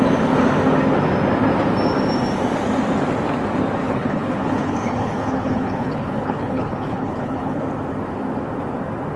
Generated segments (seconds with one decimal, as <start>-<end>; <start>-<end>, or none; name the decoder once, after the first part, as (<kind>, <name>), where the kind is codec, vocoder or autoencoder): 3.8-7.6 (codec, HILCodec)